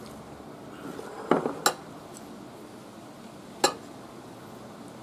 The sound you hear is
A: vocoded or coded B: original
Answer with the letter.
B